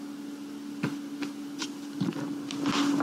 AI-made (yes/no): no